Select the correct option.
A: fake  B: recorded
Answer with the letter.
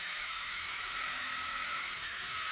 A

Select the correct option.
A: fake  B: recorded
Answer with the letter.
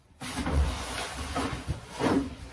A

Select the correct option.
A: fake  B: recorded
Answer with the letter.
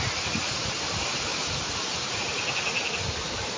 B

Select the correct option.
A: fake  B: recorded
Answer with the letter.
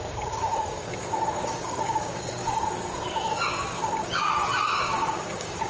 A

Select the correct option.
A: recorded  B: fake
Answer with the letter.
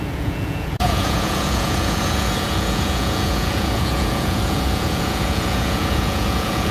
B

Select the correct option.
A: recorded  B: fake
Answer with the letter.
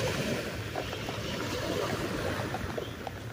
B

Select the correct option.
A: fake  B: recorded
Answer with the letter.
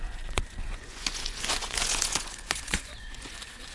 A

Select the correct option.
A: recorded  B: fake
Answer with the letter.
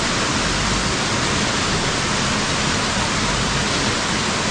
A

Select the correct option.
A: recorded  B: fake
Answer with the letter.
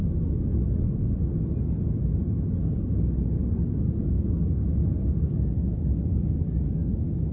A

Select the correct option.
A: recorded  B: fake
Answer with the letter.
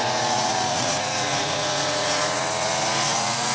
B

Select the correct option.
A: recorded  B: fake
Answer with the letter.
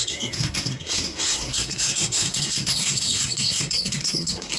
B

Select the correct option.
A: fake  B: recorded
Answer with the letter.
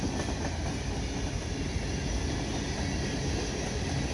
B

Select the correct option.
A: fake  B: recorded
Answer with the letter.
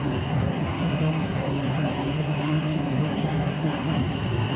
A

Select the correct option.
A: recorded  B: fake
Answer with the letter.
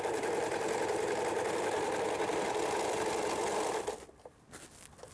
B